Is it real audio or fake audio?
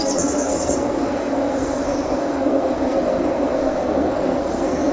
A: fake